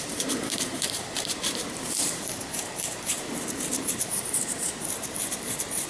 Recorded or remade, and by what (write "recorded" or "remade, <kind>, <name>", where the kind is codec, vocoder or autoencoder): remade, vocoder, BigVGAN v2